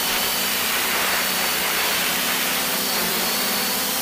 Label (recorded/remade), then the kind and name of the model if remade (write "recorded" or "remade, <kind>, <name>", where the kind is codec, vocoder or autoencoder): remade, vocoder, BigVGAN v2